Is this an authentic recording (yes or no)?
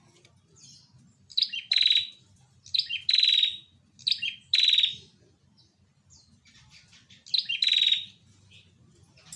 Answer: yes